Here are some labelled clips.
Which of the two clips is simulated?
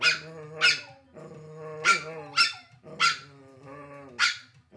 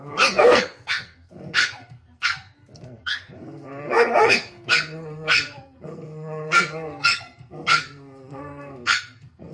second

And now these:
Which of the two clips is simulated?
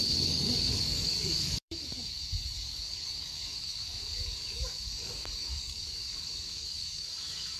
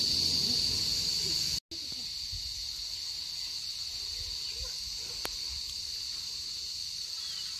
first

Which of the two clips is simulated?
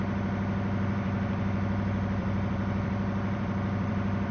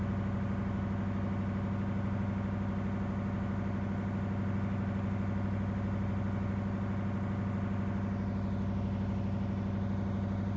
first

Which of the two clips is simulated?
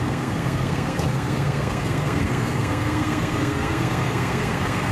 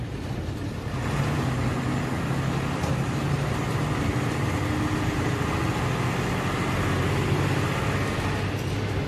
first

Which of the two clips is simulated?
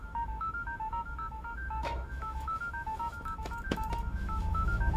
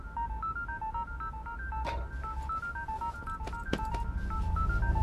first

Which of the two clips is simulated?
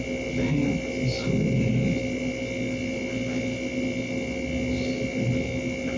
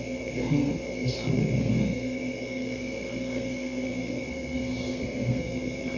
second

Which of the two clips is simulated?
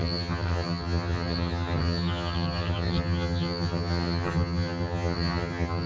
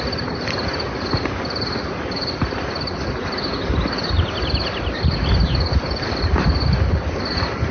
first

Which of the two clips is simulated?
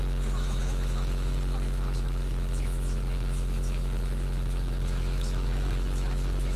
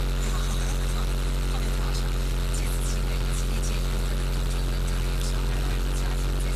first